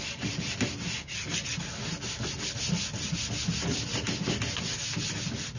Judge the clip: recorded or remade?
recorded